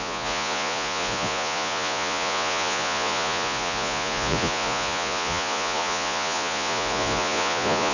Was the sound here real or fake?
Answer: fake